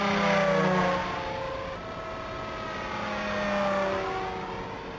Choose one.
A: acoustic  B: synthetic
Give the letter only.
A